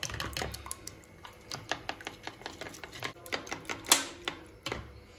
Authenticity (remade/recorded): recorded